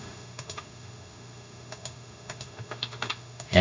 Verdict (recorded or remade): remade